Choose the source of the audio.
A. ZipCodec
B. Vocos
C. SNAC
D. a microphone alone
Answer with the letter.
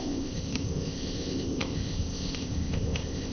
A